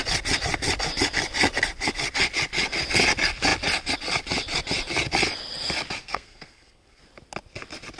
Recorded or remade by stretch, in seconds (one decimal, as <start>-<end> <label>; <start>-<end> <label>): 0.0-6.0 recorded; 6.0-7.0 remade; 7.0-8.0 recorded